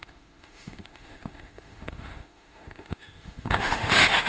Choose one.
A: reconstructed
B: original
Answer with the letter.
A